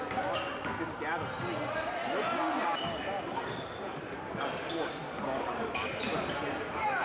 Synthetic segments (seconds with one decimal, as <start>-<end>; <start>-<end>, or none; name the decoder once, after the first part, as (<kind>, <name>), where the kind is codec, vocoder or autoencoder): none